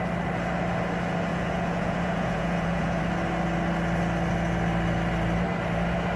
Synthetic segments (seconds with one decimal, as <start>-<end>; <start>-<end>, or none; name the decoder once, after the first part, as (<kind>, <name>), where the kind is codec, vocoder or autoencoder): 1.3-3.0 (vocoder, Vocos)